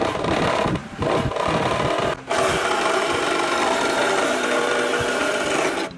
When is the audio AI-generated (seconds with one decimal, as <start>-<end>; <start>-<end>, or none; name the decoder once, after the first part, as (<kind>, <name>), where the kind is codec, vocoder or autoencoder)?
none